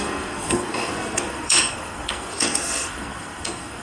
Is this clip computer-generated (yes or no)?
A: yes